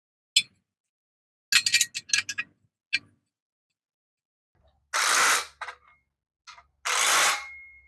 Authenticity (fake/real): real